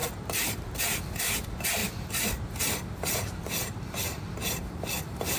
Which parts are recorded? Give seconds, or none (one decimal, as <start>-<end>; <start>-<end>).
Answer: none